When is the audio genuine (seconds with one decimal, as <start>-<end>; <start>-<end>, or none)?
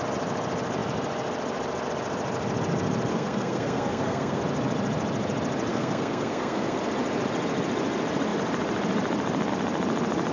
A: 0.0-3.1; 4.4-5.7; 6.8-10.3